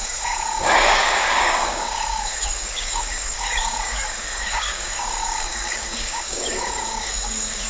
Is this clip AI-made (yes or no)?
yes